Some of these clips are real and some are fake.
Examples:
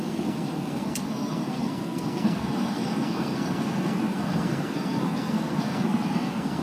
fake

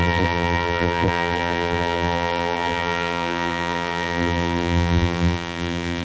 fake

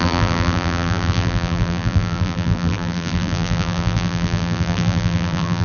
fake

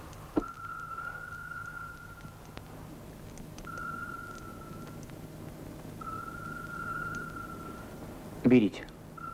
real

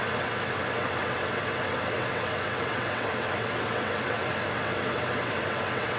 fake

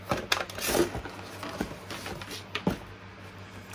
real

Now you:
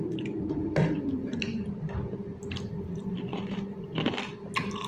fake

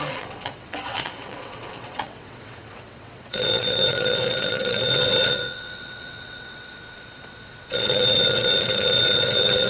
fake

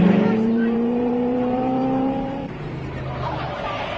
fake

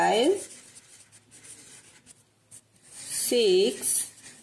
real